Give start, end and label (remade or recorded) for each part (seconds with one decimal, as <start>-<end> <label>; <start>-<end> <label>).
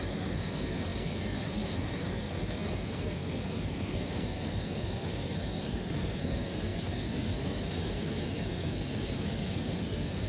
0.0-10.3 remade